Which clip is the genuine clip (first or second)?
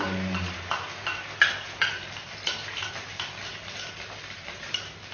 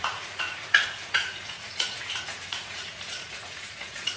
first